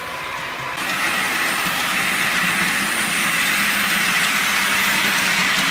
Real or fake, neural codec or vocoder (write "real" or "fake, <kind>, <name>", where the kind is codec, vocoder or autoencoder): real